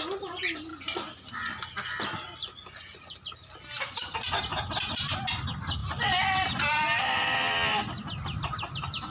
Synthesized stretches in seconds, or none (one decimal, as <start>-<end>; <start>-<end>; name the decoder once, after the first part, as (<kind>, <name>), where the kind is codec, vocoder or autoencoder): none